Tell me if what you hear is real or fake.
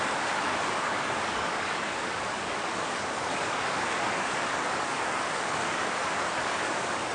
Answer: fake